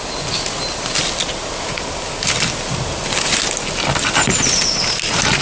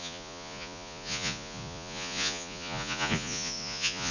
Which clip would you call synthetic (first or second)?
second